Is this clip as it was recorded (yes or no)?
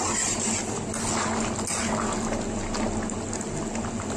yes